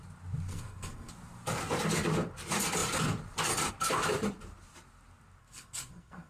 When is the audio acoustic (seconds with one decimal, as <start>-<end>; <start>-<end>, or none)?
0.0-0.5; 1.1-5.4